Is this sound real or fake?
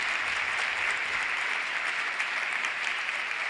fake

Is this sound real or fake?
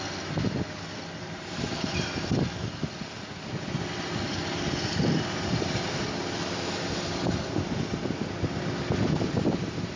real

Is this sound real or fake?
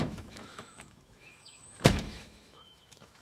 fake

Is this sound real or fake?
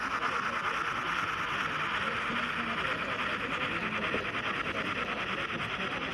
real